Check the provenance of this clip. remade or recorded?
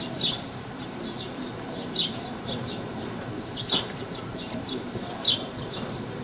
remade